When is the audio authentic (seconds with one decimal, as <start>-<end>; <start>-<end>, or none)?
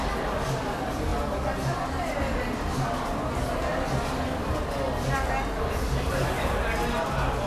0.0-7.5